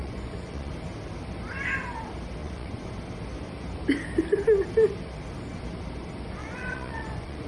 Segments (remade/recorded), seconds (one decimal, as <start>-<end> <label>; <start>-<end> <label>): 0.0-0.7 remade; 0.7-2.4 recorded; 2.4-2.9 remade; 2.9-6.4 recorded; 6.4-7.5 remade